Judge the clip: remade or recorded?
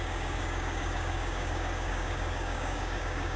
remade